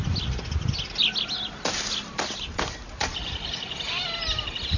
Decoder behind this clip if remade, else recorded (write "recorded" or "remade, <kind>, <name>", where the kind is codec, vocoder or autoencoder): recorded